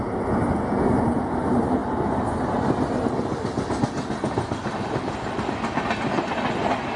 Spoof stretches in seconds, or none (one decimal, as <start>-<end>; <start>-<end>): none